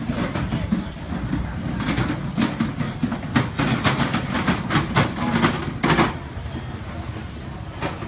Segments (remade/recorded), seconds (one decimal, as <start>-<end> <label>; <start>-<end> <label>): 0.0-8.1 recorded